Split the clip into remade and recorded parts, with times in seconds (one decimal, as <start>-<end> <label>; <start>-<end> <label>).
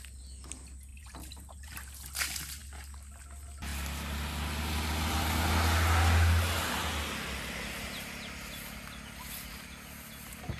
0.0-0.9 recorded; 0.9-1.7 remade; 1.7-10.6 recorded